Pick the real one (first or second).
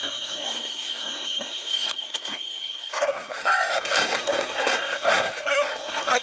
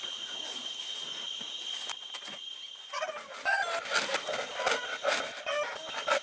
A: second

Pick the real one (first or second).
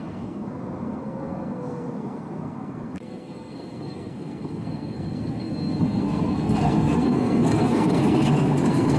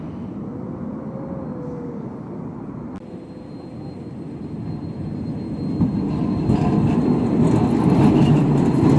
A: second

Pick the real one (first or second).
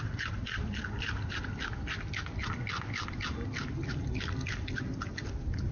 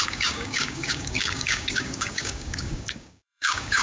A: first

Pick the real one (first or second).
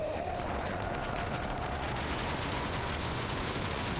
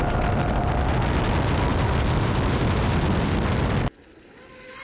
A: second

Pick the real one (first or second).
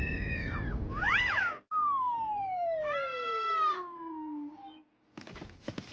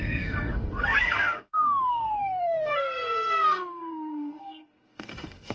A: first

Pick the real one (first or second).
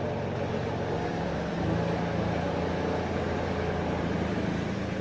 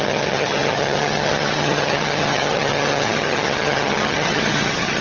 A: first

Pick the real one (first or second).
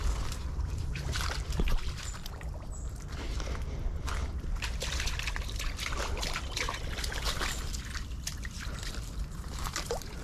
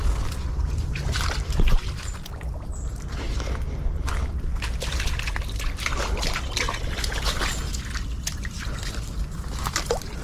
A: second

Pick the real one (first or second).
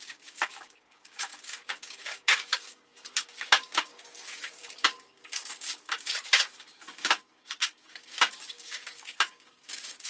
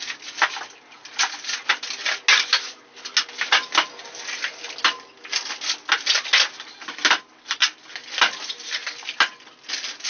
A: second